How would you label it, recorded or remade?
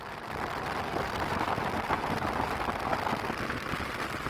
recorded